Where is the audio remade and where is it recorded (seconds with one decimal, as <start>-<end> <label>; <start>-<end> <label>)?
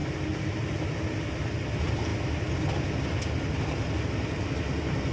0.0-5.1 recorded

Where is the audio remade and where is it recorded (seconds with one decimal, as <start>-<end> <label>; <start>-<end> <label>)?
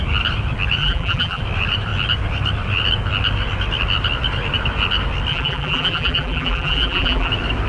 0.0-0.8 recorded; 0.8-1.4 remade; 1.4-5.3 recorded; 5.3-7.3 remade; 7.3-7.7 recorded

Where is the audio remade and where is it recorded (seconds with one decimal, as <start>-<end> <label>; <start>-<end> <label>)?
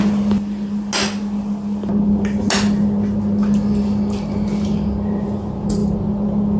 0.0-6.6 recorded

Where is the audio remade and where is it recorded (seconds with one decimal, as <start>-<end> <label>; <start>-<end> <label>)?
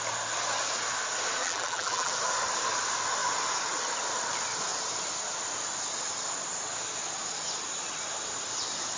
0.0-1.4 recorded; 1.4-2.1 remade; 2.1-9.0 recorded